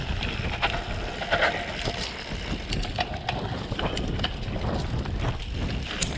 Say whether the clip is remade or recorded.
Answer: recorded